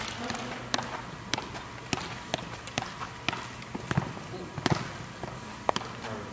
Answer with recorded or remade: recorded